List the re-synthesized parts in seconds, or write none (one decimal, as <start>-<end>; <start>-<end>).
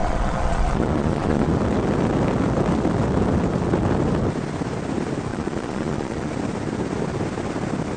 0.0-1.5; 5.3-6.3